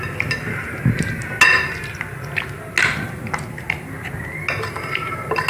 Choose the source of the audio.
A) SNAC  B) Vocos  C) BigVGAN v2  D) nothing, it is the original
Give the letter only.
D